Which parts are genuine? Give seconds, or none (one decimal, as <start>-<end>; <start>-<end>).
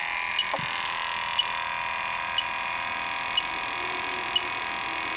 0.0-5.2